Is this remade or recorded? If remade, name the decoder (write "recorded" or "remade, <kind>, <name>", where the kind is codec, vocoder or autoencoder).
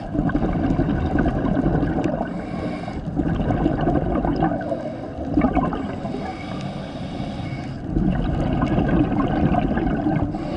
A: recorded